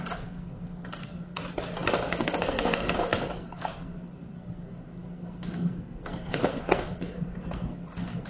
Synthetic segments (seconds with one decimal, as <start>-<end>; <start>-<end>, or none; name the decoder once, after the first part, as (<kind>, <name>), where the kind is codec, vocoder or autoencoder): 0.0-1.4 (codec, SNAC); 1.9-8.3